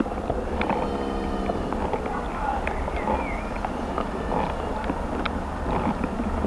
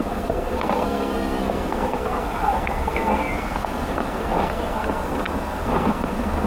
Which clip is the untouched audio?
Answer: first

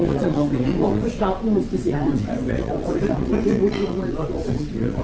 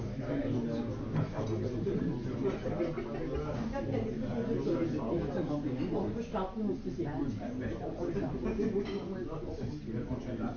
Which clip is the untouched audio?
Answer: second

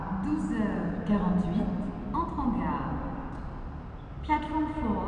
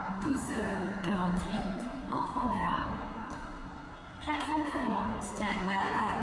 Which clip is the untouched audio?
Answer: first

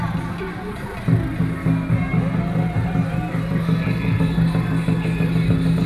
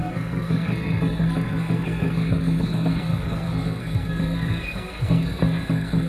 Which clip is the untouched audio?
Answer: first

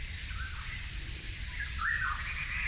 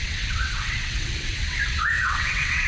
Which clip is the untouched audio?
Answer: first